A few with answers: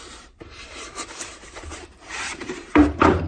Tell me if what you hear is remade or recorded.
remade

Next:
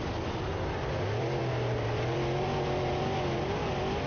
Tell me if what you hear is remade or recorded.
remade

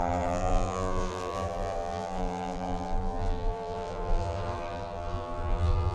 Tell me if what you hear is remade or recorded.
remade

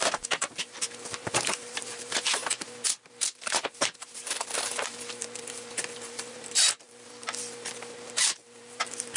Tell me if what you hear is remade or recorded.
remade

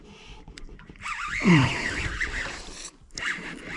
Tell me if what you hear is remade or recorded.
remade